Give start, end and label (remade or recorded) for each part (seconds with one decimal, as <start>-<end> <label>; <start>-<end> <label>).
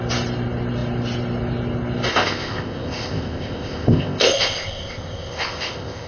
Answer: 0.0-2.1 recorded; 2.1-6.1 remade